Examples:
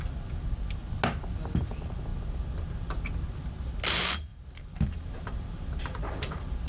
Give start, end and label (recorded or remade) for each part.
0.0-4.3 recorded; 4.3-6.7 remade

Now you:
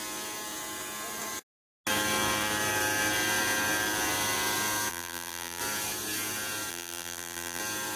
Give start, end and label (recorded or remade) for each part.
0.0-4.9 recorded; 4.9-5.6 remade; 5.6-6.7 recorded; 6.7-7.6 remade; 7.6-8.0 recorded

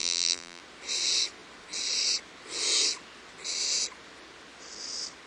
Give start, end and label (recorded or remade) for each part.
0.0-0.6 remade; 0.6-5.3 recorded